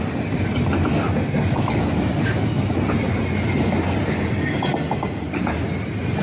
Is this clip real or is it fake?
real